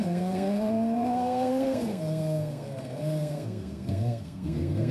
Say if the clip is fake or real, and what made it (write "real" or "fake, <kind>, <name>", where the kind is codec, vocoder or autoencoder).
fake, codec, SNAC